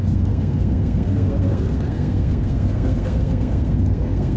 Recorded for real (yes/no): no